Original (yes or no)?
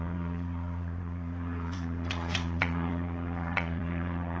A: no